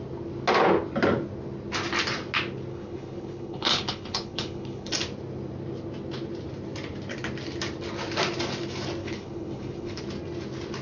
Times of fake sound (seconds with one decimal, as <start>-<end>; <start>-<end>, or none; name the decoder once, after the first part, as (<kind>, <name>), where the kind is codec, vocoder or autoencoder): 2.7-4.9 (codec, HILCodec); 9.0-10.0